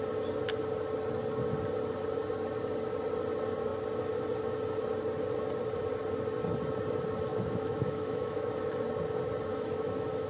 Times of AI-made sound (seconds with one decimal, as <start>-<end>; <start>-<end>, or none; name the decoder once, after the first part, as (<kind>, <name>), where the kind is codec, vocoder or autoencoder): 7.3-8.5 (autoencoder, DAC-VAE); 9.5-10.3